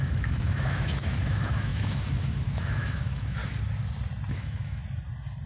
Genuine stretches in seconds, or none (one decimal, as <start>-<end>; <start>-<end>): 3.4-4.3; 4.8-5.5